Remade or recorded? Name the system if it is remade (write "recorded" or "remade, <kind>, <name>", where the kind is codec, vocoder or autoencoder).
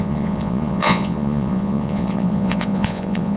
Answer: remade, vocoder, Vocos